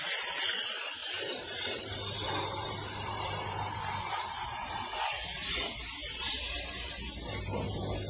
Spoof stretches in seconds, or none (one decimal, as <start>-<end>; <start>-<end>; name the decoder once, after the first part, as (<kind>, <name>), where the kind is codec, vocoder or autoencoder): 1.0-5.6 (vocoder, BigVGAN v2); 6.0-6.9